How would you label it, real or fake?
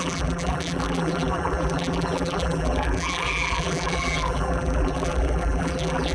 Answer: fake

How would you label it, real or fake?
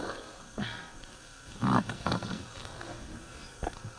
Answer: fake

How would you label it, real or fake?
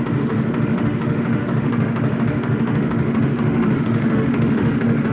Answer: fake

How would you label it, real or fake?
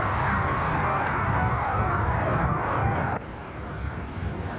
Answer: fake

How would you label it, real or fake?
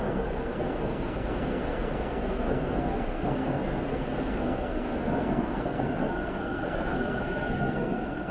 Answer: fake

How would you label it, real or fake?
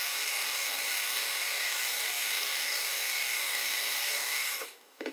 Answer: fake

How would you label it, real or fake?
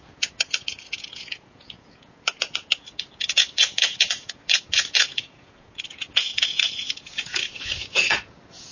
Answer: fake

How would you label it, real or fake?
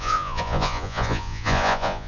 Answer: fake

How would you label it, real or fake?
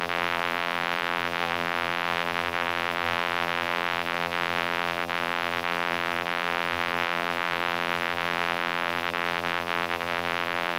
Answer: fake